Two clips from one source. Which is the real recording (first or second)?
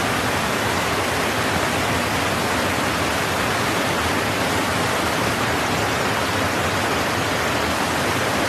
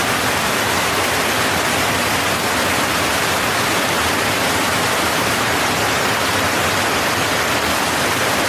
first